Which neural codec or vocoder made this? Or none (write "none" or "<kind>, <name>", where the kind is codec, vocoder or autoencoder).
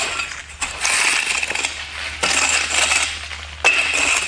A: none